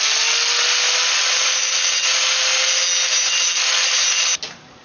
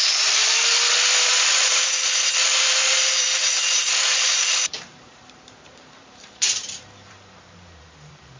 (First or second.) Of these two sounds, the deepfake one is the second